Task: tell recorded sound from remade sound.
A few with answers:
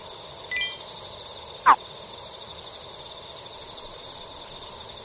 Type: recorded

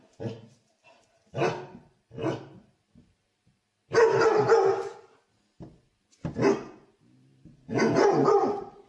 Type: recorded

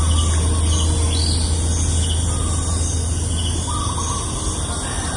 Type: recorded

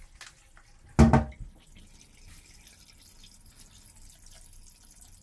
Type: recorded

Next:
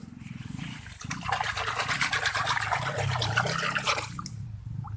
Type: recorded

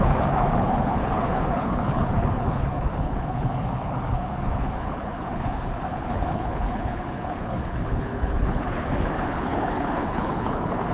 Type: remade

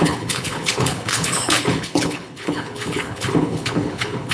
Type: remade